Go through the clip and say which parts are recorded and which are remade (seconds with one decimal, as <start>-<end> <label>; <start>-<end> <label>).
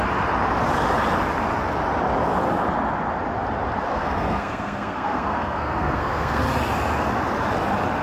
0.0-3.9 recorded; 3.9-6.4 remade; 6.4-8.0 recorded